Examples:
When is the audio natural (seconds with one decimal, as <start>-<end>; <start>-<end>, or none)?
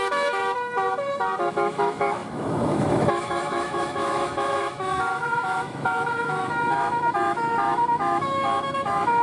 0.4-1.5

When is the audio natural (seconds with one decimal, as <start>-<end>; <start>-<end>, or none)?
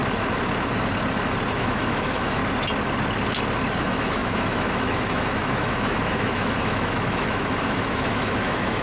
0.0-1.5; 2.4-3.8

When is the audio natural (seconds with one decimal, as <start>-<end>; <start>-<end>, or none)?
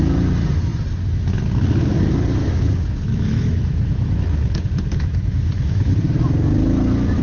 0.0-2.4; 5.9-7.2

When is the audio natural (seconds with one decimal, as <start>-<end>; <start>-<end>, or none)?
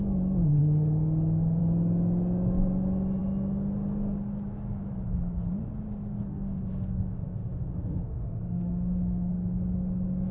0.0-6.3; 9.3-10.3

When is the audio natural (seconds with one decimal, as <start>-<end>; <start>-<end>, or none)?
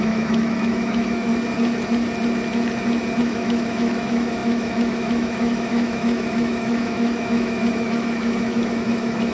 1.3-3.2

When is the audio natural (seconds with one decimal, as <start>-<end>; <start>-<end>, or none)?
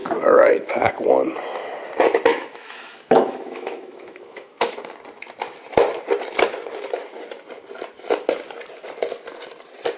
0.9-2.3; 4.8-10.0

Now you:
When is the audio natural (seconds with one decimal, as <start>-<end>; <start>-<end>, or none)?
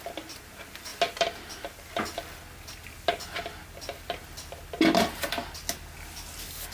0.0-6.7